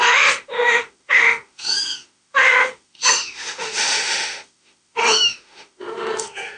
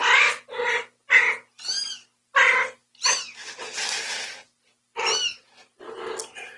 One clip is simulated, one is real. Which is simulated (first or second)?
first